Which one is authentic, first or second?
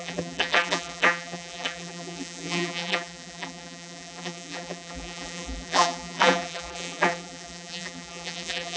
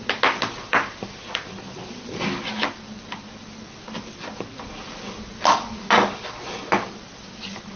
second